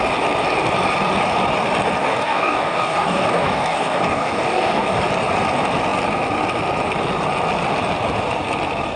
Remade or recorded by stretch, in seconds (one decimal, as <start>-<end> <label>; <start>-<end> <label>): 0.0-2.0 recorded; 2.0-5.0 remade; 5.0-9.0 recorded

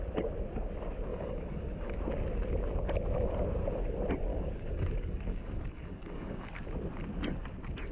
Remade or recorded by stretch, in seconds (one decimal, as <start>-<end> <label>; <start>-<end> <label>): 0.0-1.1 recorded; 1.1-2.0 remade; 2.0-4.3 recorded; 4.3-6.6 remade; 6.6-7.9 recorded

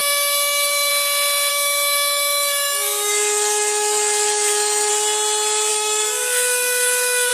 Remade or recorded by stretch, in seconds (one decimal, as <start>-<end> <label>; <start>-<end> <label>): 0.0-0.9 remade; 0.9-1.5 recorded; 1.5-4.9 remade; 4.9-5.7 recorded; 5.7-7.3 remade

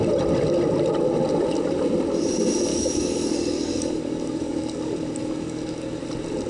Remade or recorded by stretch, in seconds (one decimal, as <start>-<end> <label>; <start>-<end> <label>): 0.0-2.7 recorded; 2.7-6.0 remade; 6.0-6.5 recorded

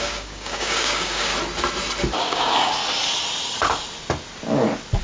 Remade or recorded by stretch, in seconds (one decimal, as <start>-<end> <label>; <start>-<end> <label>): 0.0-1.3 remade; 1.3-2.2 recorded; 2.2-2.8 remade; 2.8-5.0 recorded

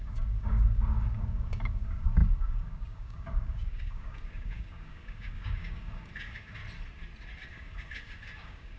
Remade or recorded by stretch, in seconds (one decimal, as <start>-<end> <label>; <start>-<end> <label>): 0.0-6.6 remade; 6.6-7.5 recorded; 7.5-8.8 remade